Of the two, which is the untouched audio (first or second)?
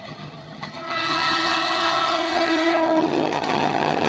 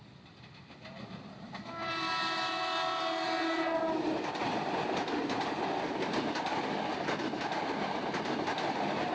second